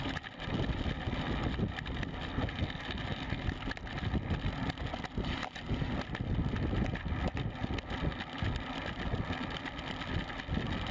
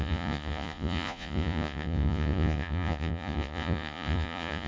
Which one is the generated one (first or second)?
second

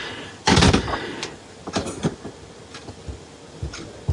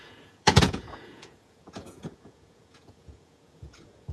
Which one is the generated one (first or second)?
second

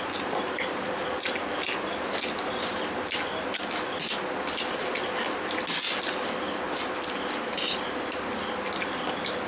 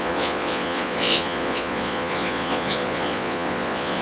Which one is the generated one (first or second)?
second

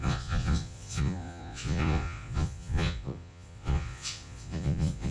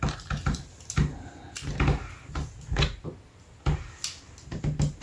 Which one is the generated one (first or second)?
first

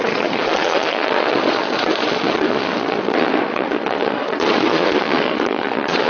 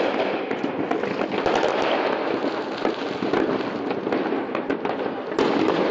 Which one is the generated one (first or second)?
first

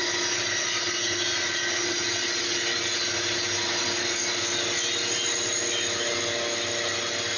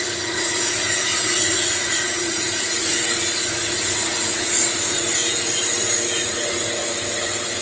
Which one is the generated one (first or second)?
second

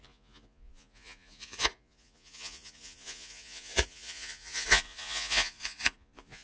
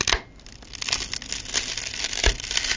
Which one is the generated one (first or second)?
first